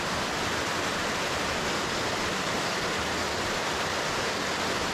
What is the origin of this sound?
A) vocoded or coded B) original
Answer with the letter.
B